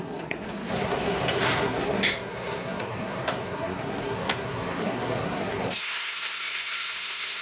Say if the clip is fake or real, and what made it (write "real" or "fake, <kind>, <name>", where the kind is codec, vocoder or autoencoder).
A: fake, codec, SNAC